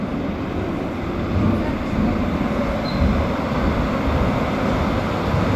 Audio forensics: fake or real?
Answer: real